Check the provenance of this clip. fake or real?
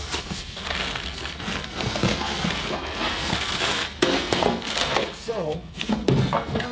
fake